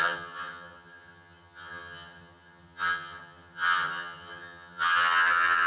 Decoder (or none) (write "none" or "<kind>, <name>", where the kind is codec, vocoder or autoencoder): vocoder, HiFi-GAN